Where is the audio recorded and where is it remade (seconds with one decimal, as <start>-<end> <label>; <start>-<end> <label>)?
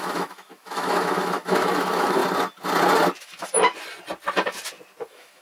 0.0-2.2 remade; 2.2-3.2 recorded; 3.2-3.7 remade; 3.7-5.0 recorded; 5.0-5.4 remade